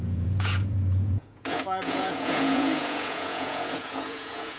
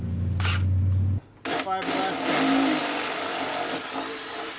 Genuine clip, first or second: second